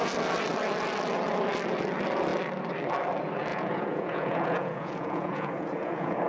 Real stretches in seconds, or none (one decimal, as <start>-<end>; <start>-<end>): 0.0-3.5